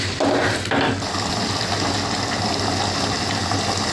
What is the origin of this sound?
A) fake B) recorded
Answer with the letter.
B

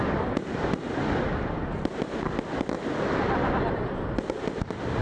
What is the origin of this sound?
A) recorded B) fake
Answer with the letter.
A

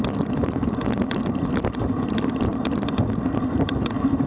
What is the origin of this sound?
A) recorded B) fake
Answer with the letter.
B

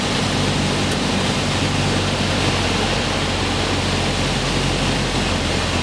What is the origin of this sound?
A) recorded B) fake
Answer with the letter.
A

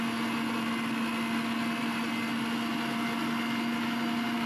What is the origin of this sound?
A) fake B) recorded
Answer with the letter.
B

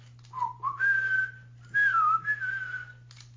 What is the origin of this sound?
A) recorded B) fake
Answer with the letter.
A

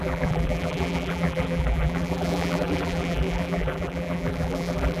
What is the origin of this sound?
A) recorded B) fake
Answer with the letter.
B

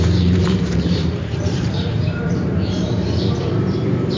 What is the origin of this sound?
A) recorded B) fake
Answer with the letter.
B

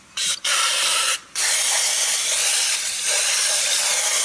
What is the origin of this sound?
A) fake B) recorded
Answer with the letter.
A